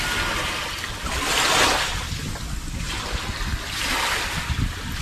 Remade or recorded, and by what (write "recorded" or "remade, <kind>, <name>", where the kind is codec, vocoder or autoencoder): recorded